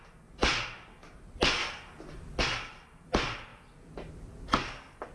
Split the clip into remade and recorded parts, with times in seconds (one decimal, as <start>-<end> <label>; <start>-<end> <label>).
0.0-3.5 recorded; 3.5-4.1 remade; 4.1-5.1 recorded